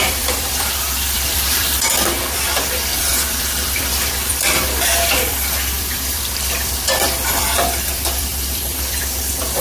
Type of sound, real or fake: fake